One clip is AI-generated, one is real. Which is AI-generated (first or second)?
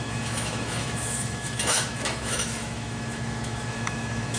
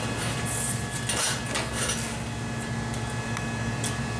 first